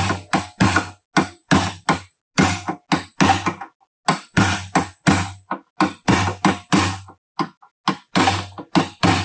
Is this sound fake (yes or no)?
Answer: no